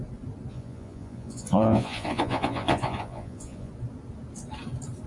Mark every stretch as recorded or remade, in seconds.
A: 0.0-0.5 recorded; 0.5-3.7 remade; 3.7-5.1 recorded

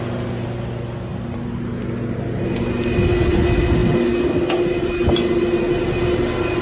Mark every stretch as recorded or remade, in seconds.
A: 0.0-6.6 recorded

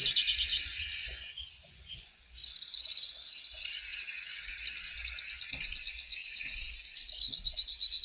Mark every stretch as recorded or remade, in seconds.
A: 0.0-0.5 recorded; 0.5-2.2 remade; 2.2-3.9 recorded; 3.9-4.5 remade; 4.5-6.1 recorded; 6.1-6.7 remade; 6.7-8.0 recorded

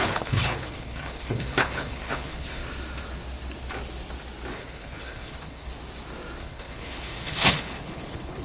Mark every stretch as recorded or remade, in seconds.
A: 0.0-2.6 remade; 2.6-4.5 recorded; 4.5-5.7 remade; 5.7-6.4 recorded; 6.4-8.4 remade